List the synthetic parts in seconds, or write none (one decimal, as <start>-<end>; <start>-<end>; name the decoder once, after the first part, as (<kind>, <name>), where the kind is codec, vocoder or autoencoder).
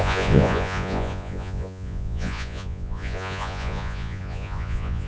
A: 0.0-5.1 (vocoder, Vocos)